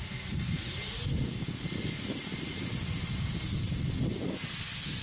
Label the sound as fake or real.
real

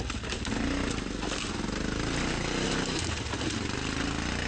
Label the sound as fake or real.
real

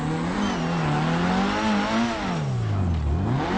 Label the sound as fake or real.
real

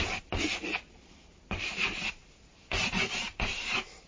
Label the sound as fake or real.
fake